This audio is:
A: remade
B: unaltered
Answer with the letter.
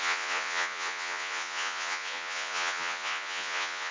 A